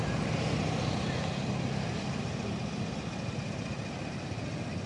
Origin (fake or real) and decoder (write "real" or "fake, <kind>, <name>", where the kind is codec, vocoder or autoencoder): real